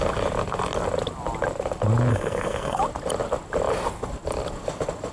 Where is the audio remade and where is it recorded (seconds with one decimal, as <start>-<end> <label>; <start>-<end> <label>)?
0.0-2.1 recorded; 2.1-2.8 remade; 2.8-5.1 recorded